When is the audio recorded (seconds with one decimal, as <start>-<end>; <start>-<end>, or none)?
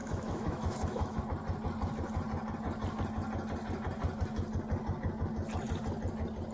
1.2-6.5